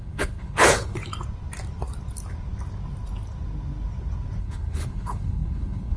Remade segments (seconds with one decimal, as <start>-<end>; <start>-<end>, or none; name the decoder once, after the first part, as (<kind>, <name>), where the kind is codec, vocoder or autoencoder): 0.0-1.0 (codec, HILCodec); 4.4-6.0